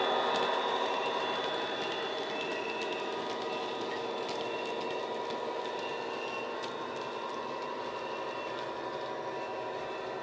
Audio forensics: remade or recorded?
recorded